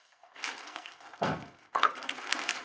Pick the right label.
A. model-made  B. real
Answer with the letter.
A